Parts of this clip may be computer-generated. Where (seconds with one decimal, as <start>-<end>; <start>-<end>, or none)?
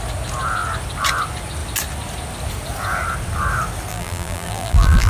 3.9-5.1